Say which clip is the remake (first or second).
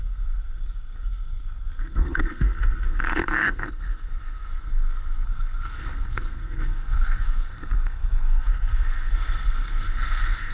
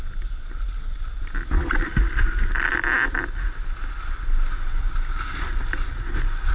first